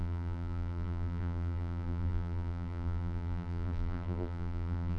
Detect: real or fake fake